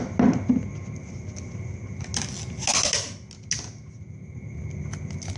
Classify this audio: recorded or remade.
recorded